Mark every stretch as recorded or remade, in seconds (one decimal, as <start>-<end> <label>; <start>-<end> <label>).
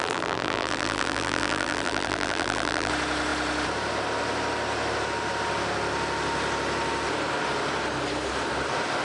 0.0-2.9 remade; 2.9-9.0 recorded